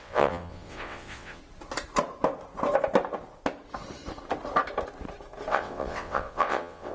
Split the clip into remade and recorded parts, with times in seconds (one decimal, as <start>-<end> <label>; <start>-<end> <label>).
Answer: 0.0-1.4 remade; 1.4-5.5 recorded; 5.5-6.9 remade